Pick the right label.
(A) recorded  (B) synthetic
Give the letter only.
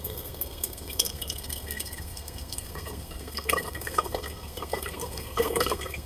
B